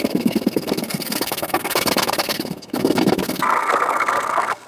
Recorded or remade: remade